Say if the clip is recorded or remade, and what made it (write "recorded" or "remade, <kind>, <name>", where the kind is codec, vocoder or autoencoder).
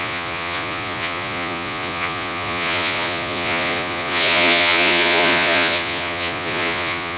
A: remade, vocoder, Vocos